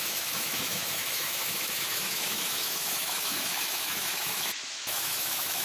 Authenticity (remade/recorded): remade